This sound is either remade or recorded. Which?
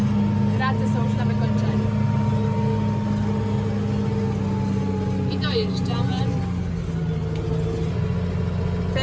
recorded